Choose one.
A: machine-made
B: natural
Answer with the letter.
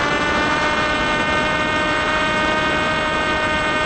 A